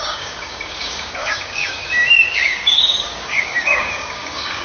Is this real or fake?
fake